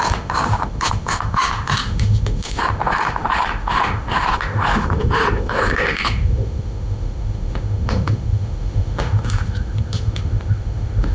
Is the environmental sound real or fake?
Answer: fake